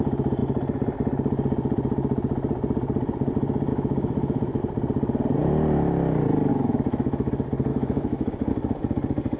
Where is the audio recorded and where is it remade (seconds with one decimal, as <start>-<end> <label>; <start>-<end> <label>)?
0.0-3.7 recorded; 3.7-4.6 remade; 4.6-6.5 recorded; 6.5-7.3 remade; 7.3-7.7 recorded; 7.7-8.5 remade; 8.5-9.4 recorded